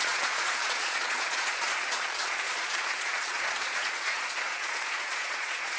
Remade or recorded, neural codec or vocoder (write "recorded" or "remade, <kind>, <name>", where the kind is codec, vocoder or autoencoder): remade, vocoder, Vocos